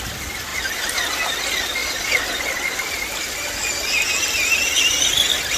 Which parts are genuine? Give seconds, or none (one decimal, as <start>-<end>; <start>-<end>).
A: 0.0-0.5; 1.4-1.8; 3.2-5.6